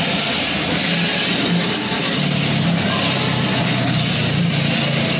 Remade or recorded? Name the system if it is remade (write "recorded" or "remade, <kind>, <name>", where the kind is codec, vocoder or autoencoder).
recorded